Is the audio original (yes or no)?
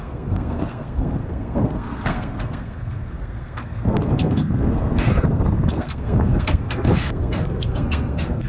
no